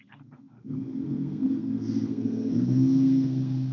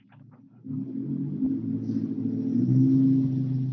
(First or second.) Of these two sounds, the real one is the second